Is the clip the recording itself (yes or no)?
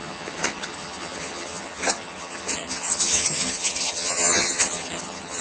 no